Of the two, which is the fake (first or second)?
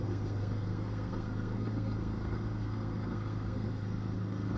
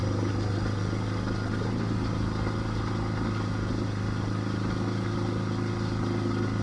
first